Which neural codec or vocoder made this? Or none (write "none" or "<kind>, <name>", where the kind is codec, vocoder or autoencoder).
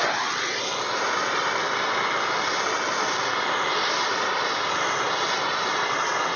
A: none